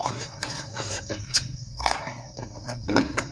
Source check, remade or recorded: remade